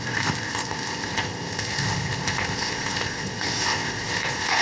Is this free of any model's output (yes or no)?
no